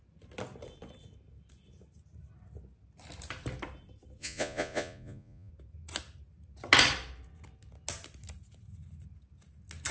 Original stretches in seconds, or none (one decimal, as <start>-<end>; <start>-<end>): 0.0-4.2; 5.5-9.9